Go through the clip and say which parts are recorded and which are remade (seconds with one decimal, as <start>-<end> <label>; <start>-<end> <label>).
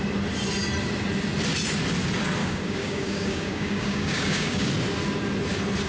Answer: 0.0-2.4 recorded; 2.4-4.7 remade; 4.7-5.9 recorded